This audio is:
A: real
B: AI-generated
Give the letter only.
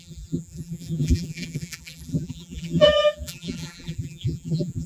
B